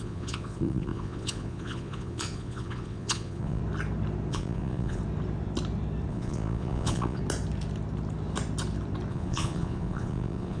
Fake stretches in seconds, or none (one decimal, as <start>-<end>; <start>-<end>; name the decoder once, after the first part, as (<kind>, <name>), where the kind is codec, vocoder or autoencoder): 0.0-3.6 (vocoder, Vocos); 4.3-5.0; 6.1-7.2; 9.1-10.6